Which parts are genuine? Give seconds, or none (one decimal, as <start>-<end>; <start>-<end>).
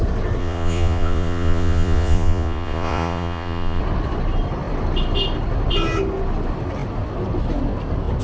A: 0.0-0.4; 3.8-8.2